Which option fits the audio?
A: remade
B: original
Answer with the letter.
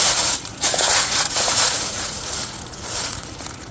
A